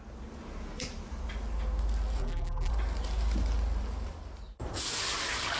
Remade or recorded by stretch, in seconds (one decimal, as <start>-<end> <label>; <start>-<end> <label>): 0.0-2.2 recorded; 2.2-2.7 remade; 2.7-5.6 recorded